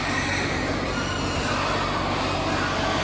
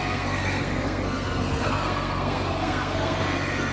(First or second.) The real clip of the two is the first